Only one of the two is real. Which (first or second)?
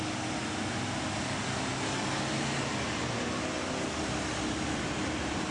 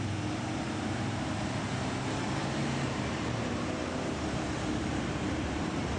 first